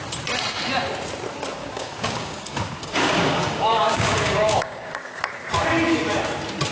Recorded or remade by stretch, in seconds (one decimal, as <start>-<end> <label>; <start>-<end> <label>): 0.0-1.6 recorded; 1.6-5.2 remade; 5.2-6.7 recorded